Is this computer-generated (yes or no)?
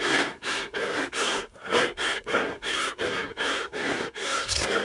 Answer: yes